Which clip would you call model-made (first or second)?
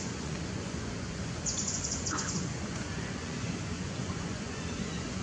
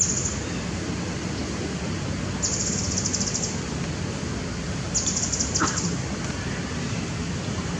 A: first